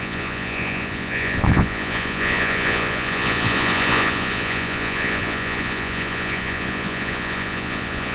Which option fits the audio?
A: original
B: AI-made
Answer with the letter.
B